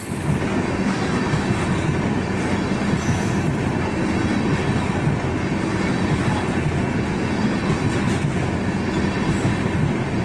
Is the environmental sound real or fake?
real